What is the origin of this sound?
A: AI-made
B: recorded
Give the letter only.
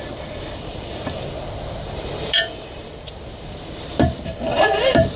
A